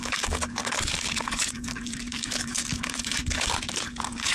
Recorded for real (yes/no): no